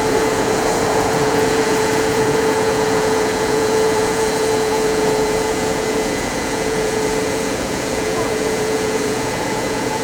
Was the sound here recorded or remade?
remade